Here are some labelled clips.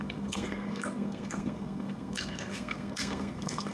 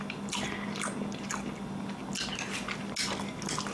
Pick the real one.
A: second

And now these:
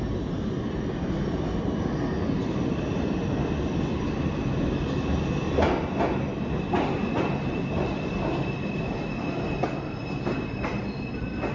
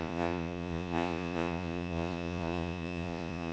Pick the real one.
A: first